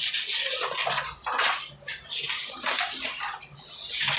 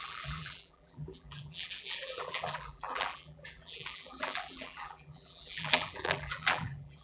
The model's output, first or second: second